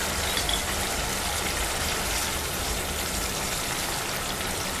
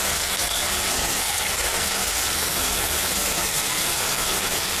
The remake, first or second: second